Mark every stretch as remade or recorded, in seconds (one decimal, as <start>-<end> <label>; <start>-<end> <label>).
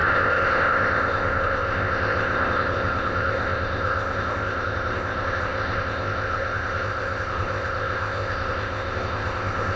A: 0.0-9.8 remade